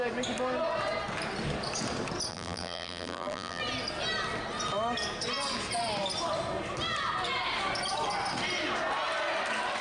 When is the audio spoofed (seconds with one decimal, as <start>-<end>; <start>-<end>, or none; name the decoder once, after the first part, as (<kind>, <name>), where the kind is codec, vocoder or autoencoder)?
2.3-3.6 (vocoder, BigVGAN v2)